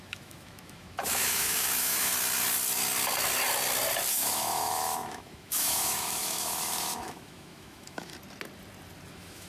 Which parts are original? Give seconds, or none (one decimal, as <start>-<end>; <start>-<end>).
2.1-4.1; 8.1-9.1